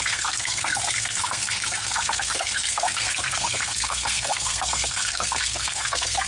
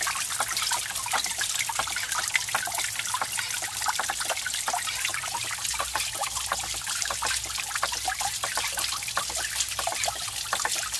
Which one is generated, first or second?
first